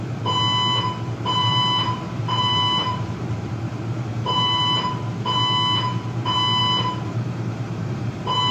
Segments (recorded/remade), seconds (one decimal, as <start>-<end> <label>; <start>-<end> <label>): 0.0-1.4 recorded; 1.4-3.3 remade; 3.3-4.1 recorded; 4.1-5.0 remade; 5.0-6.6 recorded; 6.6-8.5 remade